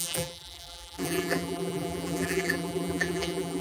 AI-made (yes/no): yes